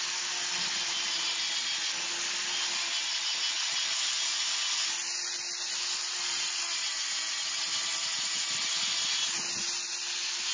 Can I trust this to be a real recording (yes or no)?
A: yes